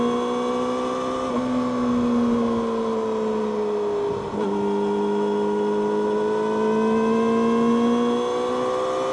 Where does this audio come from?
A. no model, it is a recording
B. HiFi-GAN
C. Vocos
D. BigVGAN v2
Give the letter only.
A